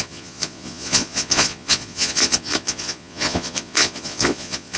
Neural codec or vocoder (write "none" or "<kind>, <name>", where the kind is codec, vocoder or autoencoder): vocoder, Vocos